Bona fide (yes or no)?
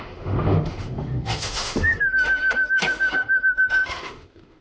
no